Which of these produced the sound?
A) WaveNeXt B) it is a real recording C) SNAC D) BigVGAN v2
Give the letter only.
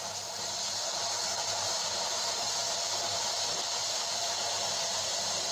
D